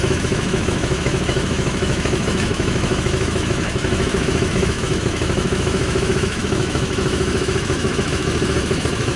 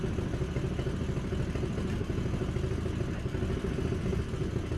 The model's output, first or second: first